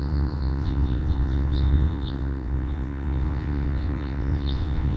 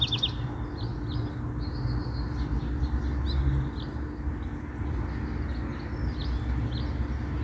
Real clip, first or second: second